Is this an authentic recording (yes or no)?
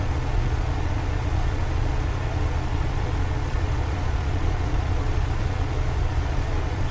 no